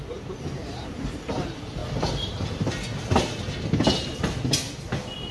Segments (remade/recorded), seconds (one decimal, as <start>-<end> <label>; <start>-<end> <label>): 0.0-5.3 recorded